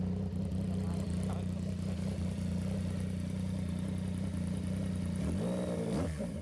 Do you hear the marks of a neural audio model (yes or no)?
no